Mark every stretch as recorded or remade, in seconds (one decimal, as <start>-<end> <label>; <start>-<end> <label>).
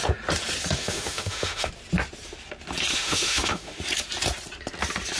0.0-0.8 recorded; 0.8-1.7 remade; 1.7-2.9 recorded; 2.9-3.8 remade; 3.8-5.2 recorded